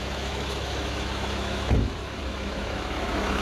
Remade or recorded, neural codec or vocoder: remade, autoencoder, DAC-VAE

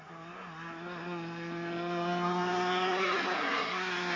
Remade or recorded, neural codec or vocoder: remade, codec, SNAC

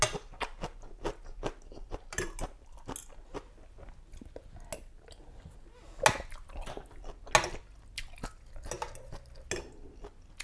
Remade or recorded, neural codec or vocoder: recorded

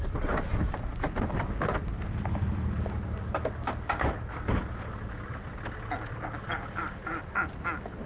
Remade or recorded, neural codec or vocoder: recorded